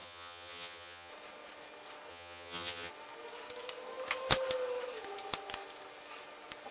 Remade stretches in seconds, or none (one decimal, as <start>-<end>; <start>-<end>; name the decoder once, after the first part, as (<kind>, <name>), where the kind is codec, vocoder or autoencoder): 0.0-1.1 (vocoder, HiFi-GAN); 2.1-2.9